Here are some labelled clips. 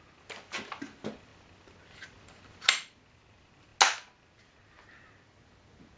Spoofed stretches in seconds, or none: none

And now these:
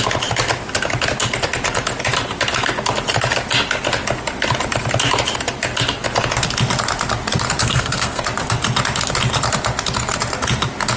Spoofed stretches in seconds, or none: 7.6-8.2 (codec, SNAC)

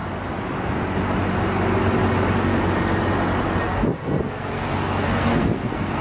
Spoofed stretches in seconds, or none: 3.6-6.0 (codec, SNAC)

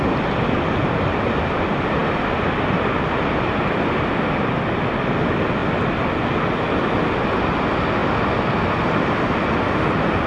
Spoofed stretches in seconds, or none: none

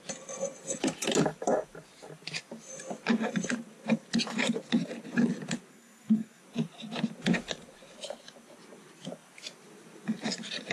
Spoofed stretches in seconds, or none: 5.7-6.4 (codec, SNAC)

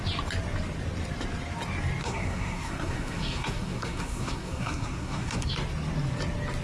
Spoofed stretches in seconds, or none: 2.0-5.5 (codec, SNAC)

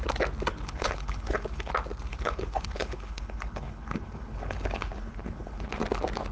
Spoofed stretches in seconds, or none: 0.5-1.7 (codec, HILCodec); 2.1-5.7